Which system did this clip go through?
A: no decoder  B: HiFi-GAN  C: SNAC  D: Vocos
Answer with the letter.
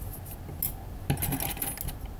A